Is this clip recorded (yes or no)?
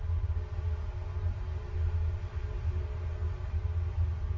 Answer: yes